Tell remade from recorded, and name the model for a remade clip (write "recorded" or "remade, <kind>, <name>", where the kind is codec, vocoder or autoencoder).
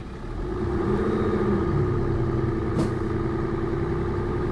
recorded